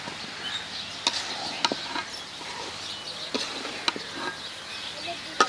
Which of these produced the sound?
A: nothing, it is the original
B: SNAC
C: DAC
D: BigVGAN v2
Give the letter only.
A